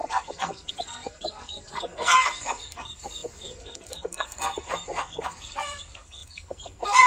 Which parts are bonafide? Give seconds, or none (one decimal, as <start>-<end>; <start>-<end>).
none